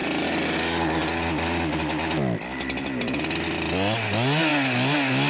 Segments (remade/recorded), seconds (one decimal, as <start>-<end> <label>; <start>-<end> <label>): 0.0-5.3 recorded